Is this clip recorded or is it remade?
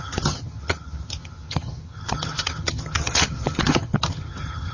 remade